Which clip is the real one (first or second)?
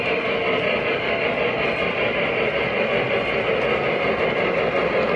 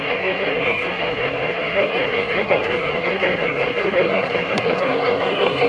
first